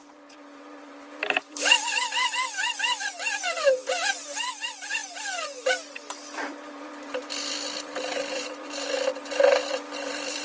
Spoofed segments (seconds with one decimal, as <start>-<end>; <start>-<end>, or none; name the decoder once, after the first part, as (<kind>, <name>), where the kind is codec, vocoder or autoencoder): 0.0-5.0 (vocoder, BigVGAN v2); 5.9-10.4